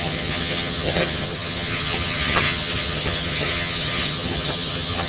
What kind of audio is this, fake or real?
fake